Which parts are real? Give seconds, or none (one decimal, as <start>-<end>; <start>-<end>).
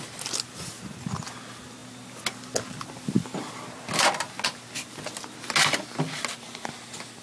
0.0-7.2